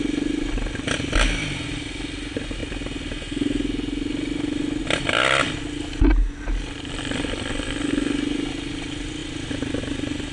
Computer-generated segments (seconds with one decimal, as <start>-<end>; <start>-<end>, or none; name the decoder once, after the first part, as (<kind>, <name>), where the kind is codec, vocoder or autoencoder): none